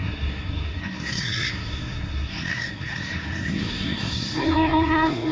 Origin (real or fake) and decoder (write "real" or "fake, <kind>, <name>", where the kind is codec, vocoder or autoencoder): fake, codec, SNAC